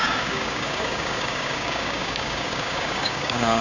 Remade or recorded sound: remade